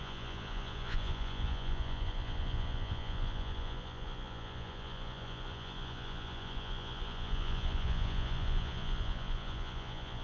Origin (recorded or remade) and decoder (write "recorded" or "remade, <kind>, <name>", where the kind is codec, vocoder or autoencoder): remade, vocoder, Vocos